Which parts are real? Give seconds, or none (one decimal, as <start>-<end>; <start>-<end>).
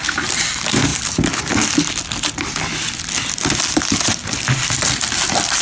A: none